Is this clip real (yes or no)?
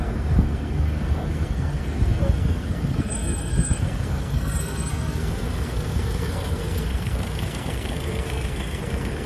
no